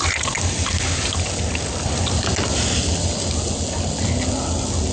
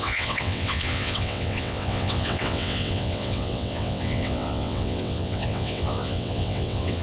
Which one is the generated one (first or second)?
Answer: second